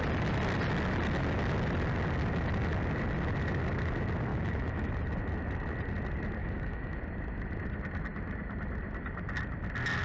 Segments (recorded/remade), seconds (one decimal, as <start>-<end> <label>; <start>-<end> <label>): 0.0-4.3 recorded; 4.3-4.9 remade; 4.9-6.4 recorded; 6.4-7.0 remade; 7.0-10.0 recorded